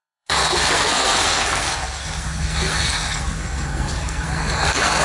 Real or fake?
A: fake